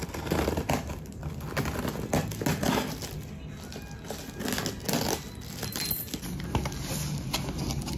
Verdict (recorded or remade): recorded